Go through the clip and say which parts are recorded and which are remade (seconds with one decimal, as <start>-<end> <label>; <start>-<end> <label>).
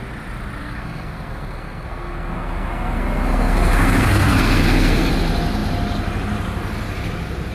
0.0-0.6 recorded; 0.6-5.1 remade; 5.1-7.5 recorded